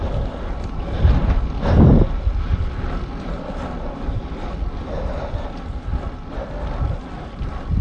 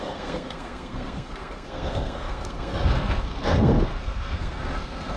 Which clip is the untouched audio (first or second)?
first